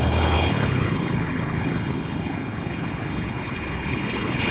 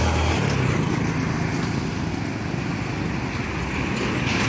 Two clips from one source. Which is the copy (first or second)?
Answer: first